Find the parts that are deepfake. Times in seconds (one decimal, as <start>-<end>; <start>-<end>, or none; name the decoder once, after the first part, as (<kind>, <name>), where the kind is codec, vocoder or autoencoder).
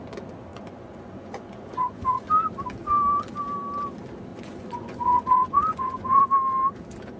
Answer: 0.5-2.3 (vocoder, Vocos); 4.3-6.2